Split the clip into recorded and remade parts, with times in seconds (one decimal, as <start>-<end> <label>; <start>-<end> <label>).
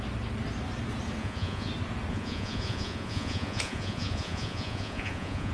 0.0-1.2 recorded; 1.2-1.7 remade; 1.7-2.1 recorded; 2.1-5.5 remade